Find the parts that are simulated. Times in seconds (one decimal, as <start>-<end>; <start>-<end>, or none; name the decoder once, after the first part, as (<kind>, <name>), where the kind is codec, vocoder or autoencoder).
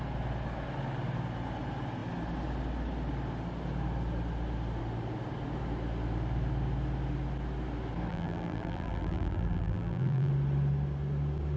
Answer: 8.1-10.3 (vocoder, BigVGAN v2)